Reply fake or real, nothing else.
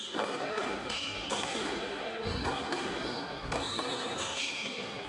fake